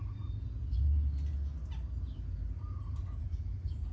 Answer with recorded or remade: recorded